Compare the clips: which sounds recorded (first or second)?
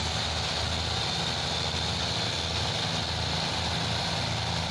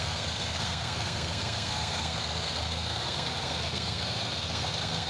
first